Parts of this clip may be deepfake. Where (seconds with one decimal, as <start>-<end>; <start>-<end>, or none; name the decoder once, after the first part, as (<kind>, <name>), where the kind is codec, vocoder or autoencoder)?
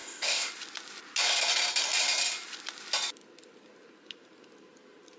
0.0-0.5 (codec, ZipCodec)